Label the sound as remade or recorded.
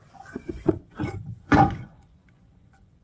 remade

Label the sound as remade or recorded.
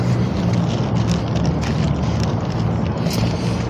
recorded